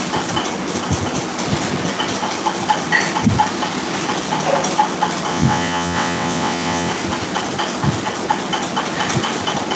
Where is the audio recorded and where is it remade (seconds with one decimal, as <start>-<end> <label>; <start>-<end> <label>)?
0.0-5.3 recorded; 5.3-6.9 remade; 6.9-9.8 recorded